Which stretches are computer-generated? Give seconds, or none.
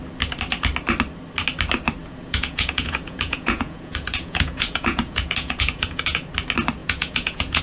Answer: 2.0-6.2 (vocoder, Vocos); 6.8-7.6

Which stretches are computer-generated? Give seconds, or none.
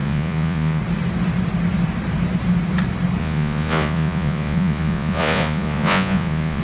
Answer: 0.0-0.8 (vocoder, Vocos); 3.2-6.6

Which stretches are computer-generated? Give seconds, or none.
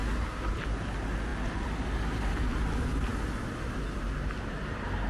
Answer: none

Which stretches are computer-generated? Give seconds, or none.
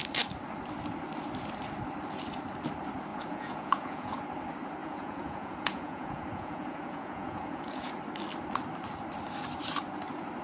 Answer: 3.1-4.2 (vocoder, Vocos); 4.8-7.9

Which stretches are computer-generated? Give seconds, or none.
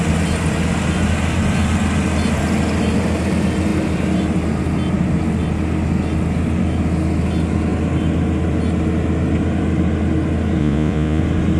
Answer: 10.6-11.2 (vocoder, Vocos)